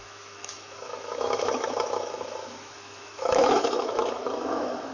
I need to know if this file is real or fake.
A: fake